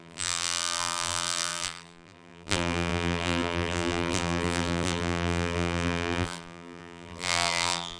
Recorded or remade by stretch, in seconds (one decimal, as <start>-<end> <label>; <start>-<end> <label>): 0.0-8.0 remade